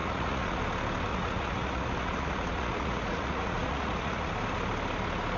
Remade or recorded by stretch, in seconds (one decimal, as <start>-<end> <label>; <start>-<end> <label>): 0.0-0.6 remade; 0.6-1.1 recorded; 1.1-4.3 remade; 4.3-5.4 recorded